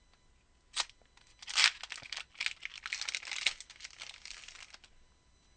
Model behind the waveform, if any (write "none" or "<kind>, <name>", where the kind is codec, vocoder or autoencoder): none